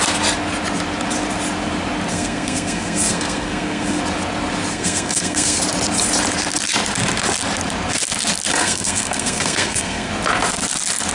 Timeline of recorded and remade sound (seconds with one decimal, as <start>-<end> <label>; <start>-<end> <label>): 0.0-2.1 recorded; 2.1-4.0 remade; 4.0-4.7 recorded; 4.7-5.6 remade; 5.6-8.6 recorded; 8.6-10.1 remade; 10.1-11.1 recorded